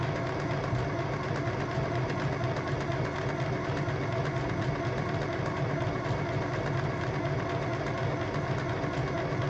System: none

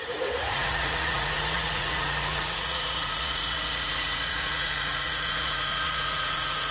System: vocoder, Vocos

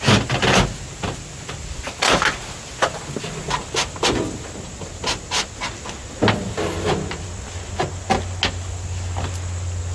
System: none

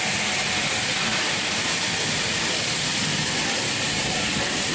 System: none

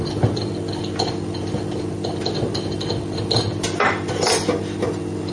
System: none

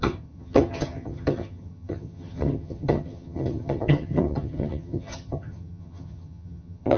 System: vocoder, HiFi-GAN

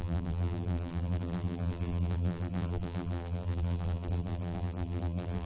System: vocoder, BigVGAN v2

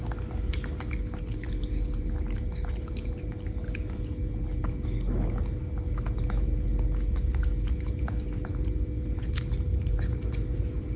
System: none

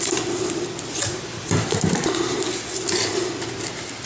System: none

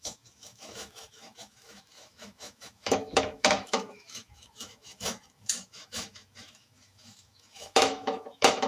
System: autoencoder, DAC-VAE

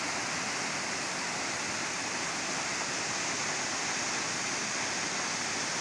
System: none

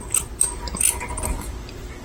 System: none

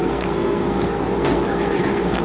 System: codec, SNAC